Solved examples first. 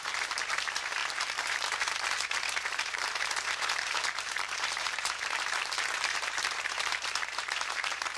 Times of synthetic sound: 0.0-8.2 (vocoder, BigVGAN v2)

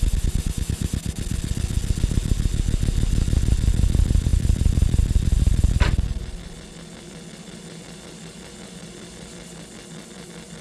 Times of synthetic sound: none